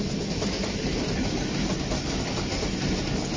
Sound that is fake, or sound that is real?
real